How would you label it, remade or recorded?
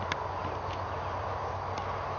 recorded